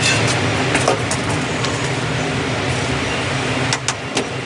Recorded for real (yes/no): yes